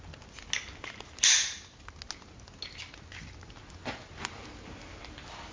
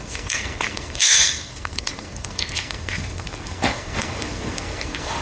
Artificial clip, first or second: second